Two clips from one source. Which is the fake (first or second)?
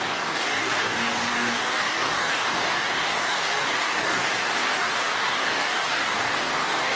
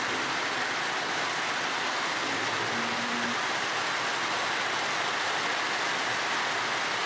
first